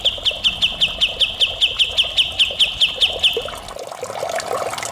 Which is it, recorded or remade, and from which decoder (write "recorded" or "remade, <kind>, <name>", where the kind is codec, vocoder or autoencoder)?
recorded